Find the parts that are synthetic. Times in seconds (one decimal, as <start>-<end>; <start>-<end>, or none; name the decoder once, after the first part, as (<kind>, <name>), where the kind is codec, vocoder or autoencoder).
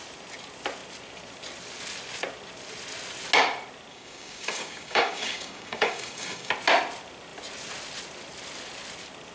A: 3.9-6.5 (codec, DAC)